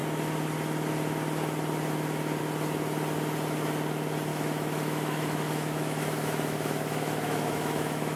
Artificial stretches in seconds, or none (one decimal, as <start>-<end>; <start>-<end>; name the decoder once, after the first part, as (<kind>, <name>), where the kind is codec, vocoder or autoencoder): 4.3-8.2 (autoencoder, DAC-VAE)